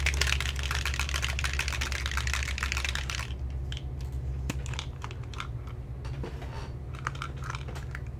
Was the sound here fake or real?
real